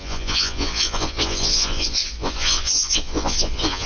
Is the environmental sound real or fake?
fake